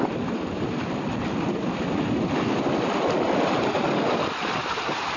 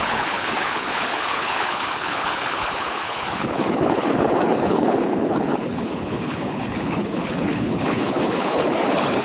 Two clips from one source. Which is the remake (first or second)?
second